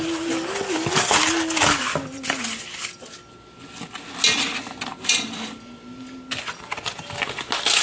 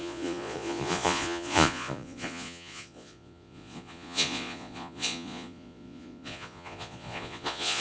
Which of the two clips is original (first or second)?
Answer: first